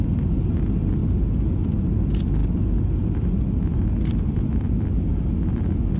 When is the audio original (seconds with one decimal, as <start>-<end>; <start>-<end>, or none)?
0.0-6.0